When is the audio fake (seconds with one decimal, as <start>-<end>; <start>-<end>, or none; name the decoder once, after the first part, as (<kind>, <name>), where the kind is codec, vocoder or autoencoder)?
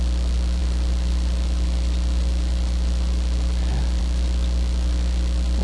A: none